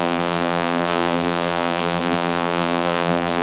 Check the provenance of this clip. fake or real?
fake